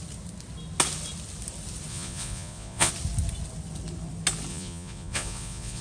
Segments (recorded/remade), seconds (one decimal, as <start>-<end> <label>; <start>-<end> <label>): 0.0-1.9 recorded; 1.9-2.9 remade; 2.9-4.5 recorded; 4.5-5.8 remade